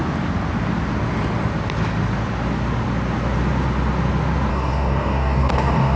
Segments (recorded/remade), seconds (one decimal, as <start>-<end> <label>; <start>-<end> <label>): 0.0-4.5 recorded; 4.5-6.0 remade